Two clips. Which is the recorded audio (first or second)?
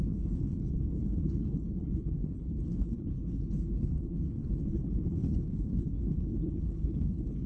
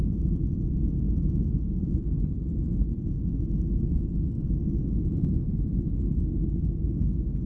second